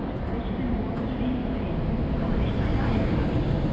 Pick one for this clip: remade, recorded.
recorded